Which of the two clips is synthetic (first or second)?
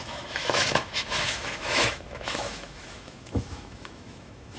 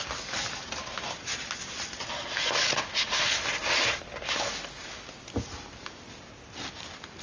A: first